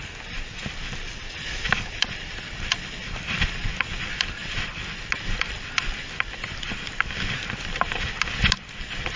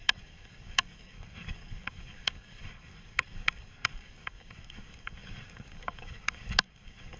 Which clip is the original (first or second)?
first